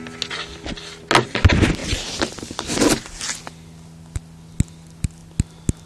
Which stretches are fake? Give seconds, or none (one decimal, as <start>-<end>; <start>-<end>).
none